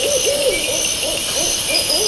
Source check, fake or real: real